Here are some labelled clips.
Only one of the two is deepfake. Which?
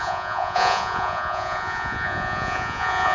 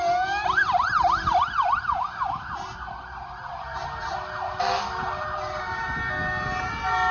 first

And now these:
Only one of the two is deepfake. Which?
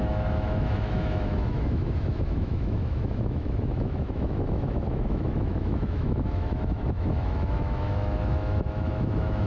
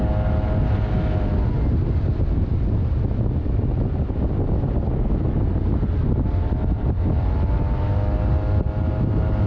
first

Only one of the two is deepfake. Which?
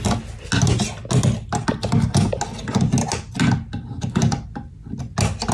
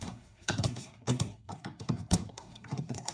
second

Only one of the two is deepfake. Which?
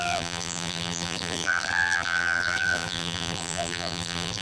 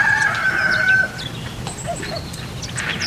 first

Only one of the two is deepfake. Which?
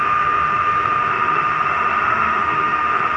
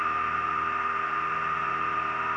first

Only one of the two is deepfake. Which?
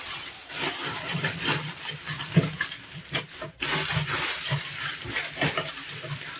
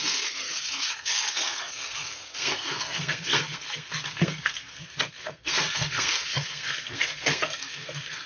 second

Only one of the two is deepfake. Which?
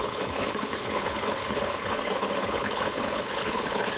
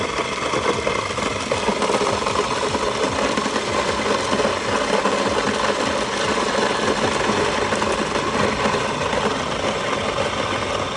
first